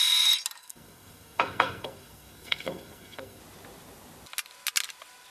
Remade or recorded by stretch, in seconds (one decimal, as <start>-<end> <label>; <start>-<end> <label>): 0.0-0.6 recorded; 0.6-3.4 remade; 3.4-5.3 recorded